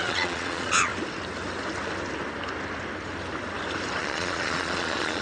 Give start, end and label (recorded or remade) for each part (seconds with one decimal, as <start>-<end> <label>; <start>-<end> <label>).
0.0-0.9 remade; 0.9-4.0 recorded; 4.0-5.2 remade